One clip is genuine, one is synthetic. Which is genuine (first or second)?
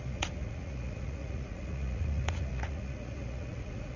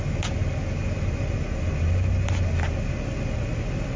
second